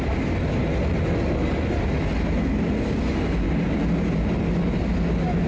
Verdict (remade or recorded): recorded